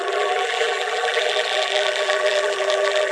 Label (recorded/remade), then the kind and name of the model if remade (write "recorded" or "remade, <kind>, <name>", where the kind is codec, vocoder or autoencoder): remade, vocoder, BigVGAN v2